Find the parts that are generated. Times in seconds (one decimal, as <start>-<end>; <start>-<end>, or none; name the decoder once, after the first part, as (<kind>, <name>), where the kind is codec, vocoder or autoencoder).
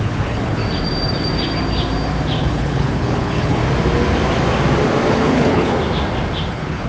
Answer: 0.0-0.6 (codec, HILCodec); 2.4-3.6; 5.1-5.7; 6.5-6.9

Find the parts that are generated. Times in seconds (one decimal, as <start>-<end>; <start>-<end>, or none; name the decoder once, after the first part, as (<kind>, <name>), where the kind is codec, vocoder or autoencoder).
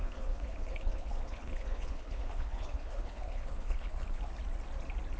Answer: 0.0-4.3 (codec, HILCodec)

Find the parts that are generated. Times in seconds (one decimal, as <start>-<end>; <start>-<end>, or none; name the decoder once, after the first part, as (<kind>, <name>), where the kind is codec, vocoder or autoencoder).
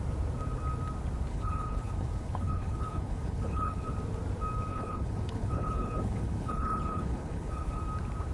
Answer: 1.3-3.9 (codec, HILCodec); 4.7-7.8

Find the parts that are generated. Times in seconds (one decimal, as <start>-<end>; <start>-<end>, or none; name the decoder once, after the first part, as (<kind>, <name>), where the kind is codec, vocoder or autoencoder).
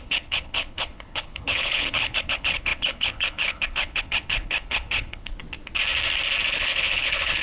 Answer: 0.0-5.4 (codec, HILCodec); 6.5-7.4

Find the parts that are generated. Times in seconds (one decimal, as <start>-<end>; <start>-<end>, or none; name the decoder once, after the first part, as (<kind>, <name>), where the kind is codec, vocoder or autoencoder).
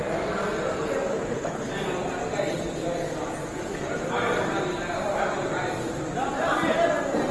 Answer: 1.1-1.7 (codec, HILCodec)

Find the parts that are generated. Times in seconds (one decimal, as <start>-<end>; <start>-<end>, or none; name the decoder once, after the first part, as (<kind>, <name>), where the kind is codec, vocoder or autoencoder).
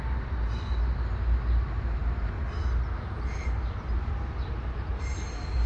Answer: none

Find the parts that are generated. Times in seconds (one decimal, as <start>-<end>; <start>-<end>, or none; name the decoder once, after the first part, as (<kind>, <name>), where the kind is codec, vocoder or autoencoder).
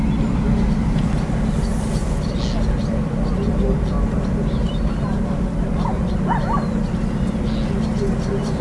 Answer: none